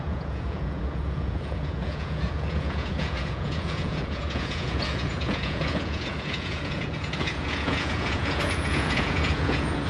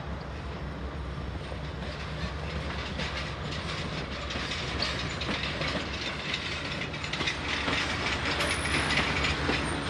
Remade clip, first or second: first